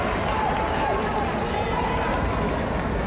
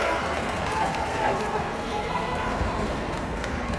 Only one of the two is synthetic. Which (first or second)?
second